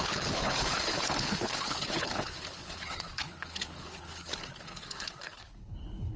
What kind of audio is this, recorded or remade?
remade